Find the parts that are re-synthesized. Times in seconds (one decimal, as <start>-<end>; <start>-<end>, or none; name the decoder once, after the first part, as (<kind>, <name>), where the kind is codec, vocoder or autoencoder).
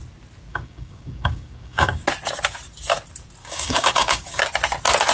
0.5-2.0 (codec, DAC); 3.4-4.4